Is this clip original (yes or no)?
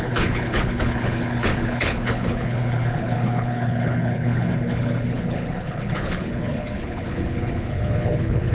no